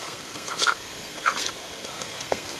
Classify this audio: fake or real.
fake